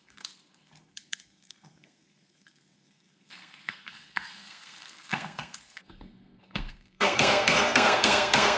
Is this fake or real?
fake